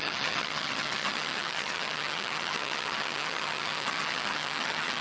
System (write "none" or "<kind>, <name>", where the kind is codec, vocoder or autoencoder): vocoder, HiFi-GAN